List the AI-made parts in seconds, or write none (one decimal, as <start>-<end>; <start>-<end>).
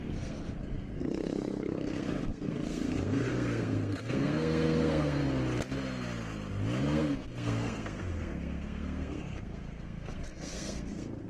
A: 0.0-5.2; 6.8-11.3